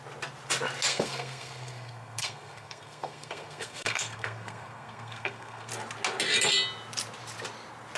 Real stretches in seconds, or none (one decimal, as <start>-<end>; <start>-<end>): 0.0-0.9; 5.7-8.0